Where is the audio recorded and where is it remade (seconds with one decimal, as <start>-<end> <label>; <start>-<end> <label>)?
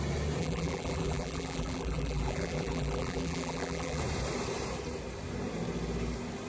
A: 0.0-0.4 recorded; 0.4-4.0 remade; 4.0-6.5 recorded